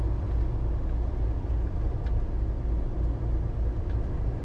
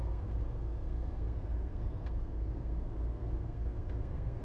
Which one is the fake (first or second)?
second